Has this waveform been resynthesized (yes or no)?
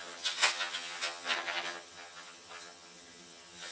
yes